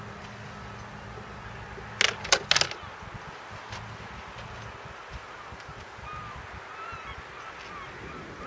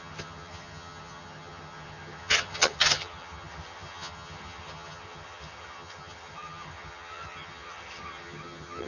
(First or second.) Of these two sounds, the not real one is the second